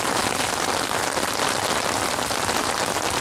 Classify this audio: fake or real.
real